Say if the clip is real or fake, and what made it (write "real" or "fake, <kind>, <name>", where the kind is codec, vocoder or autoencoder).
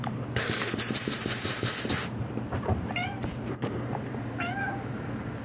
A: fake, vocoder, BigVGAN v2